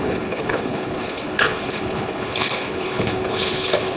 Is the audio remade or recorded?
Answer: remade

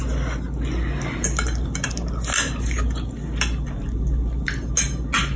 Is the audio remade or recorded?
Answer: recorded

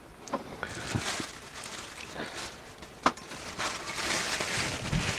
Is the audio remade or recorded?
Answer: recorded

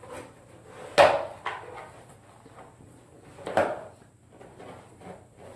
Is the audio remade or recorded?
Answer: recorded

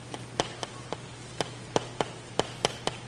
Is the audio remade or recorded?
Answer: recorded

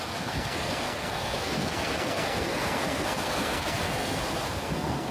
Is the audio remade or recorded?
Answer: remade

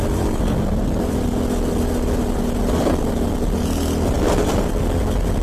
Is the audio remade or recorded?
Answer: recorded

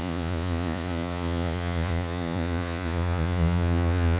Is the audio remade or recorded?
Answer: remade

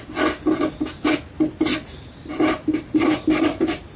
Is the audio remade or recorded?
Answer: recorded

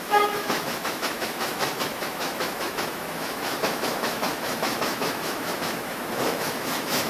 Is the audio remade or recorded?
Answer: remade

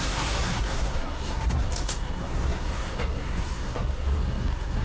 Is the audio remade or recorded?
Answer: remade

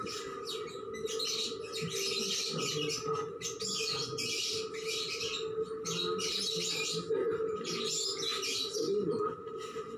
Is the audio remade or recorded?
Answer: recorded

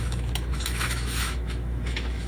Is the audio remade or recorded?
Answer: remade